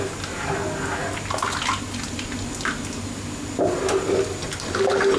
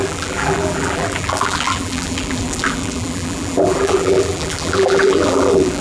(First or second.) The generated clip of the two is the second